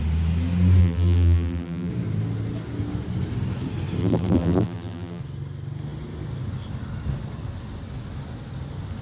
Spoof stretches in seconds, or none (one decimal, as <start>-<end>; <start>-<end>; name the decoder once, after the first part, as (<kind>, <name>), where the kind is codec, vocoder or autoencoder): 0.8-1.9 (vocoder, BigVGAN v2); 4.0-5.2